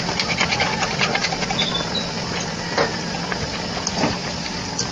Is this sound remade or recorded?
recorded